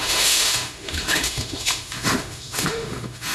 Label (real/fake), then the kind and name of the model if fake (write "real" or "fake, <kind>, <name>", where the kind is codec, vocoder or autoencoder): fake, autoencoder, DAC-VAE